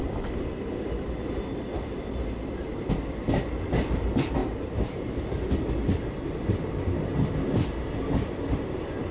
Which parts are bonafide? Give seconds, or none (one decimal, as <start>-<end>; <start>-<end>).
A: 0.0-4.4; 5.1-9.1